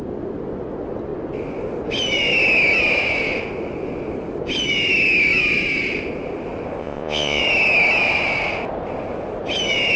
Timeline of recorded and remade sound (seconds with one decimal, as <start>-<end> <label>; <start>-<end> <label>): 0.0-6.8 recorded; 6.8-7.4 remade; 7.4-10.0 recorded